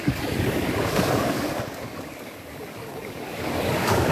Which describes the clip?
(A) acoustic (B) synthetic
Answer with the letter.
B